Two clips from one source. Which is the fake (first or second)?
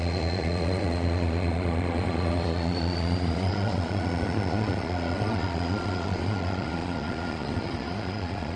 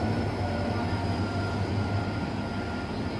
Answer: first